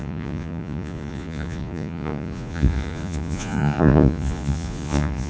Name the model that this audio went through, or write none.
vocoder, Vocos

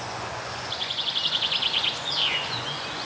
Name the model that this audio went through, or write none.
vocoder, Vocos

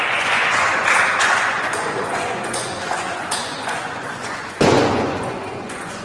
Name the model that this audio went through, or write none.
vocoder, Vocos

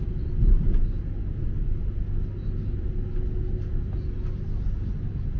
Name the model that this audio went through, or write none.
none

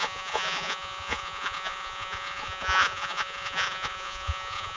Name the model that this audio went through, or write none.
vocoder, Vocos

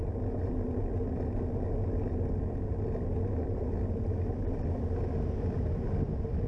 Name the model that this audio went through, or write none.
none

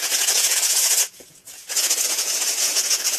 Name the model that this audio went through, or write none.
vocoder, Vocos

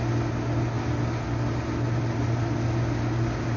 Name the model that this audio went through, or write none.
none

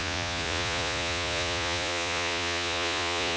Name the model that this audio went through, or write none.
vocoder, Vocos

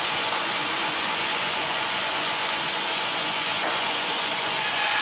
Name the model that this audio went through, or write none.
vocoder, Vocos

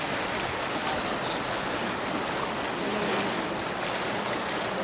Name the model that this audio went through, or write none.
none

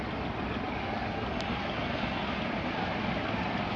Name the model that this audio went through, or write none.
none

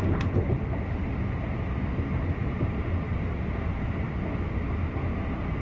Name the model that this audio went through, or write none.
none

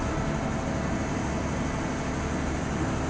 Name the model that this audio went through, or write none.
none